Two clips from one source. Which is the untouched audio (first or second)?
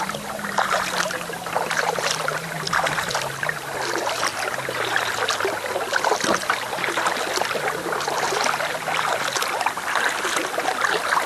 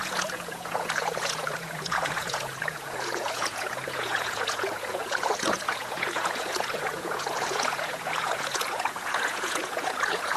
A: first